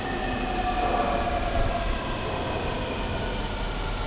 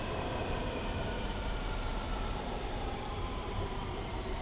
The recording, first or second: first